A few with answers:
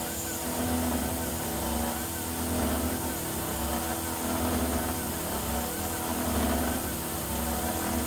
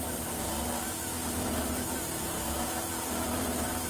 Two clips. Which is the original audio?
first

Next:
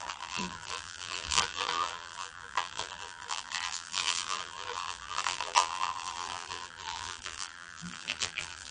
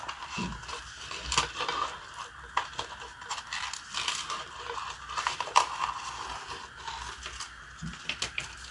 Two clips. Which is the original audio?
second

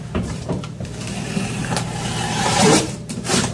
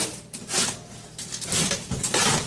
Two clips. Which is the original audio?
second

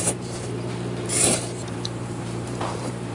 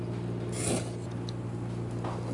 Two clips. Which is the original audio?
second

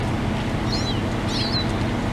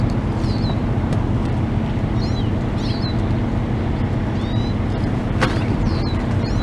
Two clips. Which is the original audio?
first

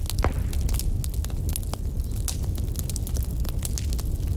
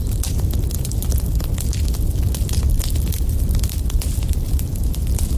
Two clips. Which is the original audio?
first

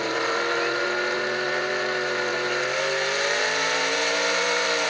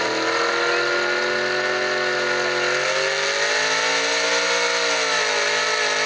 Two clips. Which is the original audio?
second